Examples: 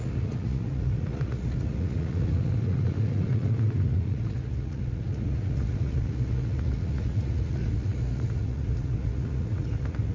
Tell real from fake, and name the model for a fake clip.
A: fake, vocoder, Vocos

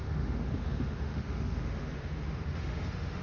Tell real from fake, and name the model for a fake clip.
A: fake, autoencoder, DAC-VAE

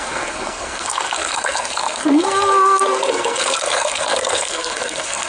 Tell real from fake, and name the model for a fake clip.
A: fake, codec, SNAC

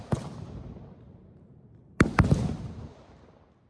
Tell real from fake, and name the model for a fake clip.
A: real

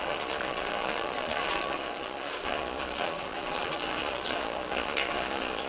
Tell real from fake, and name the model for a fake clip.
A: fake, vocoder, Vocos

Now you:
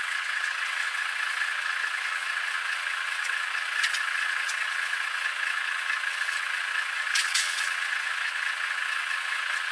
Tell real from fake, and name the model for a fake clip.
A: fake, vocoder, WaveNeXt